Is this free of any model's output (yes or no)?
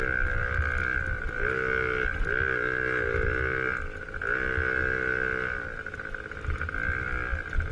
yes